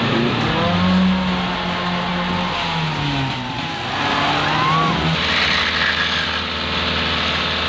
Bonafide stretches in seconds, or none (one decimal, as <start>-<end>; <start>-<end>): 0.0-7.7

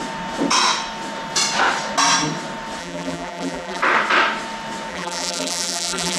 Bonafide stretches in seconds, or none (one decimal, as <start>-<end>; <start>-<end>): 0.0-2.8; 3.8-4.9

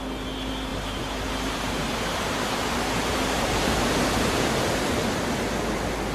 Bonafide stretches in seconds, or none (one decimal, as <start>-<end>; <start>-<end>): 0.0-0.7; 4.4-6.1

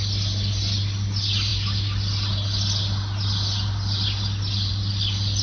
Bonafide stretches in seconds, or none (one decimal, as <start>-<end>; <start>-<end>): 0.0-5.4

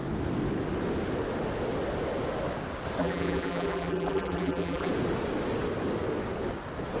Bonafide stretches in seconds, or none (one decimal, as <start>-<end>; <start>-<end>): 0.0-3.0; 4.9-7.0

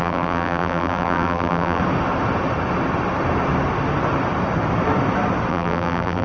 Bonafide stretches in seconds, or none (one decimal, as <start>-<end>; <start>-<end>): 1.8-5.5

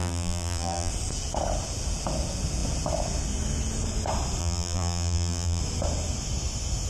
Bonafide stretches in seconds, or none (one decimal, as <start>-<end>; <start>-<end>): 0.9-4.4; 5.6-6.9

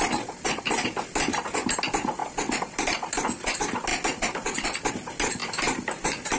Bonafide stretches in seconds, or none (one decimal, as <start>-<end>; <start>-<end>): 0.0-2.2; 3.1-5.4; 6.0-6.4